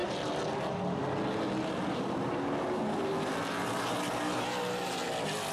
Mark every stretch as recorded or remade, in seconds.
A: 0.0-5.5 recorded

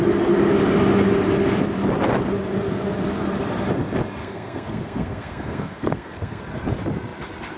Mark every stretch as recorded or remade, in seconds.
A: 0.0-4.2 recorded; 4.2-6.4 remade; 6.4-7.6 recorded

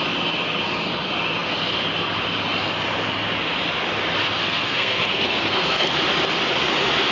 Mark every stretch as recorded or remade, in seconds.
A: 0.0-4.4 recorded; 4.4-5.9 remade; 5.9-7.1 recorded

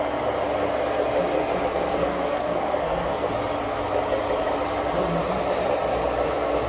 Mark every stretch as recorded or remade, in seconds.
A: 0.0-1.7 recorded; 1.7-3.3 remade; 3.3-6.7 recorded